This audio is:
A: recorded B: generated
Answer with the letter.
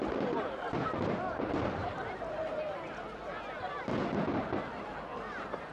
A